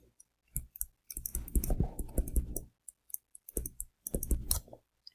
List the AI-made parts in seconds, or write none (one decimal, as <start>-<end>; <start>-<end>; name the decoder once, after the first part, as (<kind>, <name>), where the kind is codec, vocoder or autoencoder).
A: none